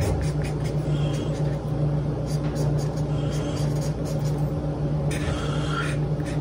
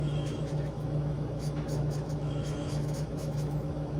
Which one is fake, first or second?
second